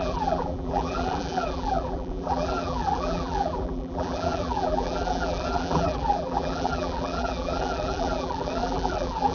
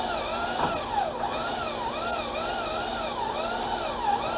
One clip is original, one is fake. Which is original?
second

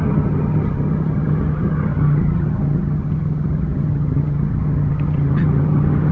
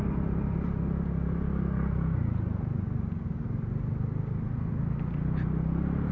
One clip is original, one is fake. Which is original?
second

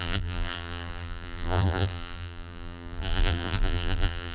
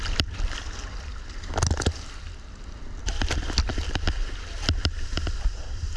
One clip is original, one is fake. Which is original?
second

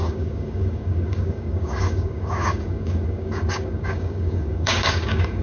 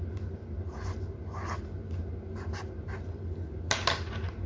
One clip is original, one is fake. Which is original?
second